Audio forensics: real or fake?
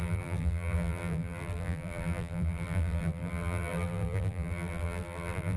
fake